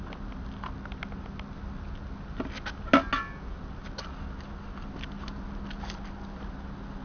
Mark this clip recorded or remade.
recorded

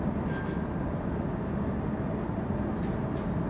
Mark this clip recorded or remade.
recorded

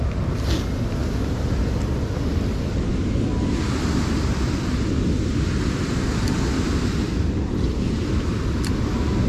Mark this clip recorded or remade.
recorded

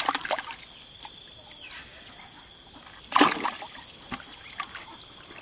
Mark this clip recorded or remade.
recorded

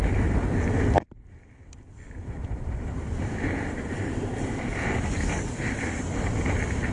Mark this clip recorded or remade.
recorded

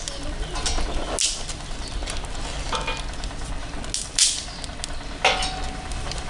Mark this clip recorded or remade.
recorded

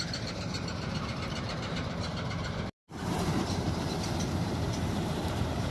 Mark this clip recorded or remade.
remade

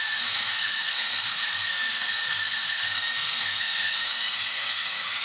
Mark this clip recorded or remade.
remade